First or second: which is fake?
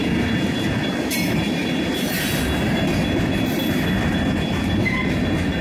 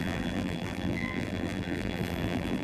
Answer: second